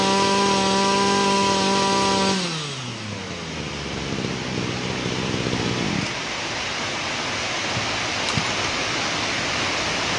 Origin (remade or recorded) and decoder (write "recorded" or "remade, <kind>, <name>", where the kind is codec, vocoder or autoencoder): recorded